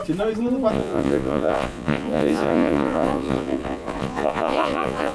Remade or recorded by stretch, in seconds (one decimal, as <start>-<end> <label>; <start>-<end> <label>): 0.0-0.7 recorded; 0.7-5.1 remade